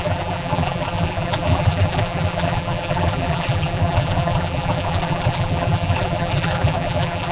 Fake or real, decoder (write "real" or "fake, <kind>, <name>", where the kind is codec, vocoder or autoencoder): fake, vocoder, BigVGAN v2